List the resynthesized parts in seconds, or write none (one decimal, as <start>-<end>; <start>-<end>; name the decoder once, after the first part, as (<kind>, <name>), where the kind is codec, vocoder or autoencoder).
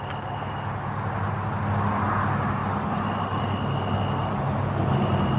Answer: none